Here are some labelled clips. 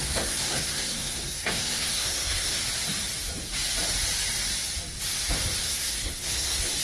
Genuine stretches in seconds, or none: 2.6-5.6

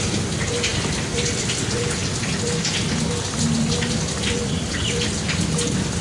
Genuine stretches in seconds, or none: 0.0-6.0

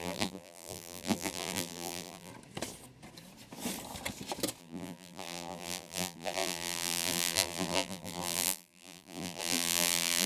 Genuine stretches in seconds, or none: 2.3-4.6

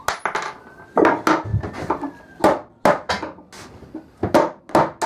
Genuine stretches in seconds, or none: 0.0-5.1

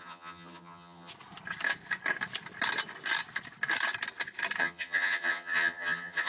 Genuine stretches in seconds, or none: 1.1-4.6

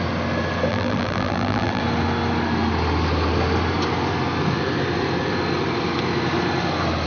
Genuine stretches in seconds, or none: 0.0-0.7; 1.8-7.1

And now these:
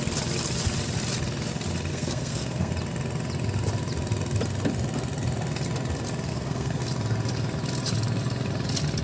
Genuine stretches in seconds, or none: 0.0-1.9; 2.7-6.3; 6.8-9.0